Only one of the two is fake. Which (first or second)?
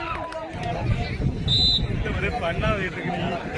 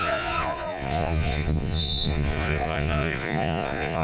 second